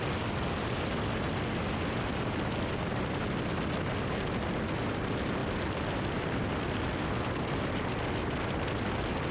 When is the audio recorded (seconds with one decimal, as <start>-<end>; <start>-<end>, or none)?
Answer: 0.0-5.4; 7.8-9.3